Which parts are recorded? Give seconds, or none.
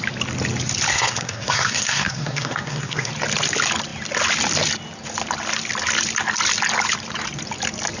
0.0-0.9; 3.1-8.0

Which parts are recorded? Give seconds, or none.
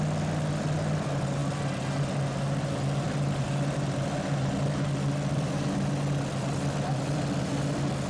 0.0-8.1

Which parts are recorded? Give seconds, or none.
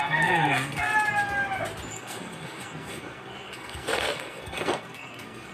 0.9-1.9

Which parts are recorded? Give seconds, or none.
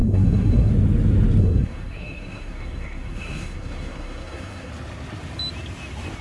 0.7-1.4; 4.7-6.2